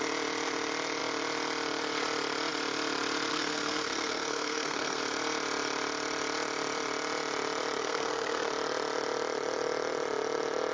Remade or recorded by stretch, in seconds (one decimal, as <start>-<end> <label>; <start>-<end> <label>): 0.0-3.3 recorded; 3.3-5.0 remade; 5.0-7.8 recorded; 7.8-8.5 remade; 8.5-10.7 recorded